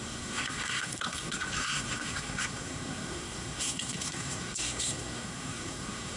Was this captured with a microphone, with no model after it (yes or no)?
no